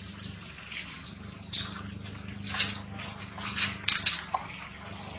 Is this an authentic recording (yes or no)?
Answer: yes